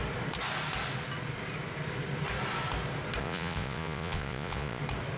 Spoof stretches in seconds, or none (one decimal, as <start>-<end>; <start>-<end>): 3.2-4.8